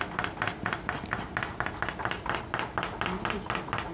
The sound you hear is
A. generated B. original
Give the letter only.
B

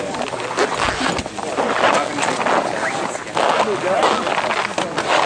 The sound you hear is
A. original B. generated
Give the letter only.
A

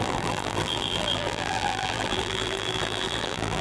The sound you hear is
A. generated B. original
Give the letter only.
A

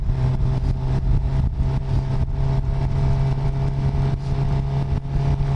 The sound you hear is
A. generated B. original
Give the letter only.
B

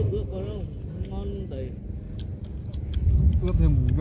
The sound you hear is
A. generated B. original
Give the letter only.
B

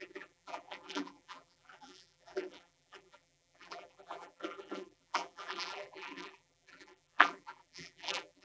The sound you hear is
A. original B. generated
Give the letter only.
B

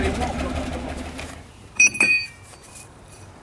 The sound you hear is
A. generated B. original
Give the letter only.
A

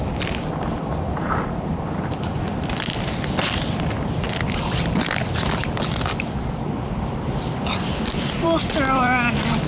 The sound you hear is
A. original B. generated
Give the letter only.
B